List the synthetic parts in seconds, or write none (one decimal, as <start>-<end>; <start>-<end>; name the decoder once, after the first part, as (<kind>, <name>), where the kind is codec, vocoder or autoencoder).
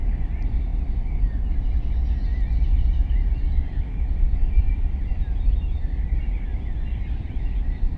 0.0-0.7 (vocoder, BigVGAN v2); 4.6-6.5; 7.0-8.0